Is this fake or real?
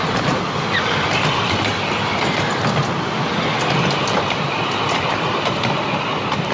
fake